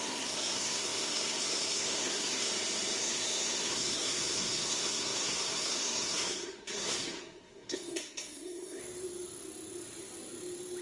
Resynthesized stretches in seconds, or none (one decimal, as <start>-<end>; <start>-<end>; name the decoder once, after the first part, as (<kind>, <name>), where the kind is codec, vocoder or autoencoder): 0.0-2.5 (codec, SNAC); 3.0-8.8